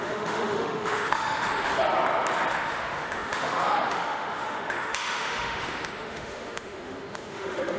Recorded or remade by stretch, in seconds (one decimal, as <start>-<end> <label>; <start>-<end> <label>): 0.0-1.7 remade; 1.7-2.5 recorded; 2.5-7.8 remade

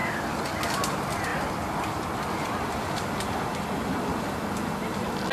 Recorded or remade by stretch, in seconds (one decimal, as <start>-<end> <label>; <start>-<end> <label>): 0.0-1.3 recorded; 1.3-4.3 remade; 4.3-5.3 recorded

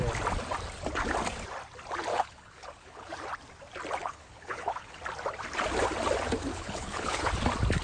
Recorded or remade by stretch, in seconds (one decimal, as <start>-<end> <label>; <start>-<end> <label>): 0.0-2.1 recorded; 2.1-3.1 remade; 3.1-4.0 recorded; 4.0-5.0 remade; 5.0-6.5 recorded; 6.5-7.3 remade; 7.3-7.8 recorded